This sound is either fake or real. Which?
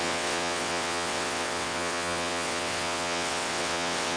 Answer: fake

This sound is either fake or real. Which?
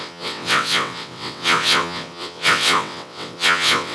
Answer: fake